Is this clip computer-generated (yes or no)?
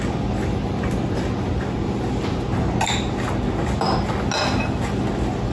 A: no